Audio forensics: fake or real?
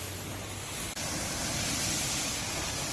real